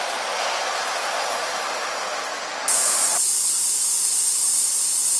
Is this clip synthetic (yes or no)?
no